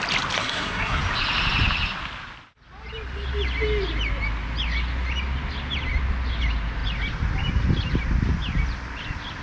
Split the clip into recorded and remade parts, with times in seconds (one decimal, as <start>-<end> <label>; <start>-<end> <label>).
0.0-0.4 recorded; 0.4-1.0 remade; 1.0-9.4 recorded